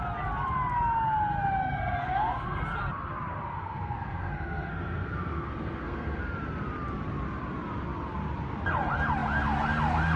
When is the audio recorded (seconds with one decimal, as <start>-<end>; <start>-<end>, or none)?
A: 0.0-1.6; 2.6-3.4; 6.2-10.2